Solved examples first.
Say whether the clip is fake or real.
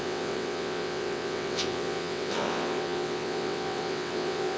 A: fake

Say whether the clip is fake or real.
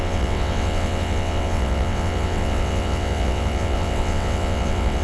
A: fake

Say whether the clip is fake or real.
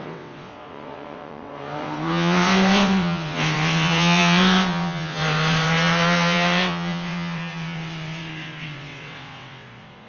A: fake